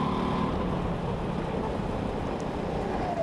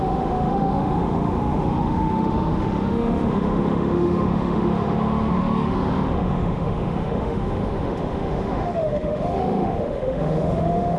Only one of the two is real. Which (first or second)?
first